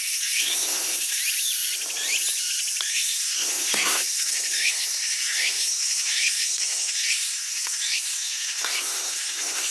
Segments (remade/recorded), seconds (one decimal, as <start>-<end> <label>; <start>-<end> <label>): 0.0-1.2 remade; 1.2-2.9 recorded; 2.9-9.7 remade